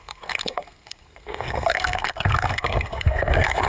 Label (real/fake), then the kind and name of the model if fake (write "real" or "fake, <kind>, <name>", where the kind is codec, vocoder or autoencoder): fake, codec, SNAC